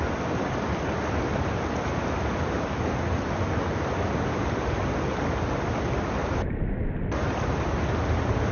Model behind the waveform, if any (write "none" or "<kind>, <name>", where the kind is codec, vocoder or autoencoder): none